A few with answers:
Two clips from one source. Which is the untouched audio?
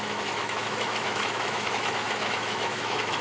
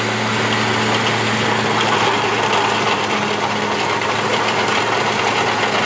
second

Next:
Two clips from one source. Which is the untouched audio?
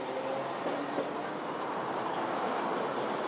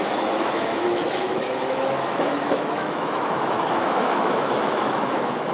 first